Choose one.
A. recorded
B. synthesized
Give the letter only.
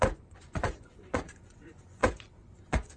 B